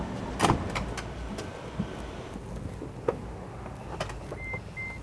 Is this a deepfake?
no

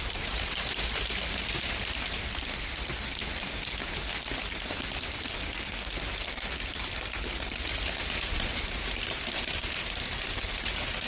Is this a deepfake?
no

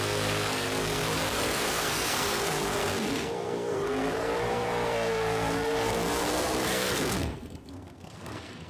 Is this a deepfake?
yes